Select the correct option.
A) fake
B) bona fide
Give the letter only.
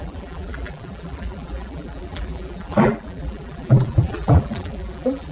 A